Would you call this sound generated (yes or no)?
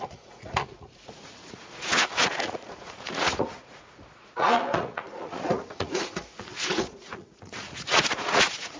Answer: yes